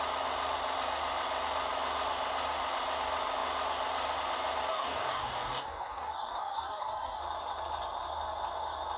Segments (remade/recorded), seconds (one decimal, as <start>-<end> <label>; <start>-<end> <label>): 0.0-4.7 recorded; 4.7-7.2 remade; 7.2-9.0 recorded